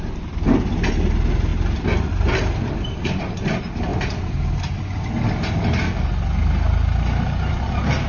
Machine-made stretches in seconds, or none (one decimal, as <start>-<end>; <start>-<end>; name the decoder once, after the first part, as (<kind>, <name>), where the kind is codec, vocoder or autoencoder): none